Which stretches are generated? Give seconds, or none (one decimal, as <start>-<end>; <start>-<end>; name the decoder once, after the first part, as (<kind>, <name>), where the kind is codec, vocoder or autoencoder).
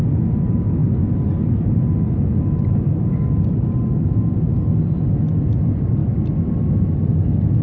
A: none